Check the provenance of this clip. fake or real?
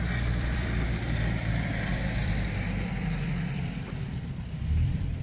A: fake